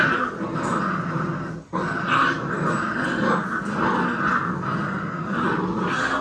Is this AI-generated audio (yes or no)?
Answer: no